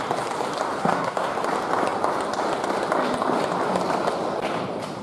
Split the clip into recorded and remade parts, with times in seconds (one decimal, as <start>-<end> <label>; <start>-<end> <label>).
0.0-0.8 recorded; 0.8-1.3 remade; 1.3-5.0 recorded